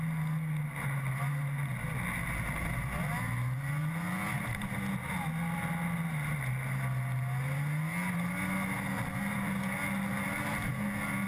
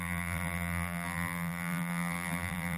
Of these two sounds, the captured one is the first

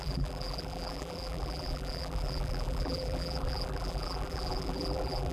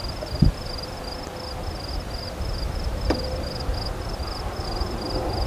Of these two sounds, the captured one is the second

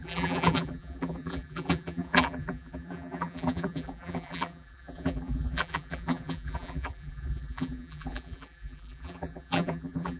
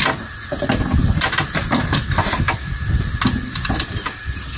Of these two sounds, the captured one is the second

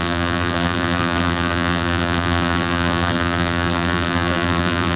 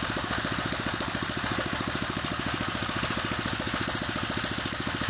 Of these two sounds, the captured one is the second